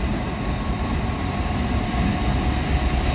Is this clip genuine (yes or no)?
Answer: yes